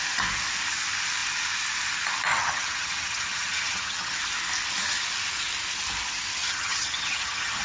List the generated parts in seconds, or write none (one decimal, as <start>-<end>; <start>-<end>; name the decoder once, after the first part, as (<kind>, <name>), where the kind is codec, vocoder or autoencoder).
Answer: 2.3-4.2 (vocoder, HiFi-GAN); 6.3-7.6